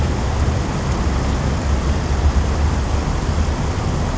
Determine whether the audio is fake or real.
real